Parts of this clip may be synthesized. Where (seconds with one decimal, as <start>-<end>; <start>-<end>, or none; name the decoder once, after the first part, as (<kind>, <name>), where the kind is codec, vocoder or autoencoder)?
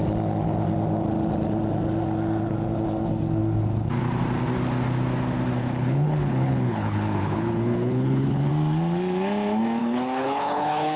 5.6-8.5 (codec, HILCodec); 9.8-11.0